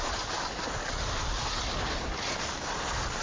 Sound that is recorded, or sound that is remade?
recorded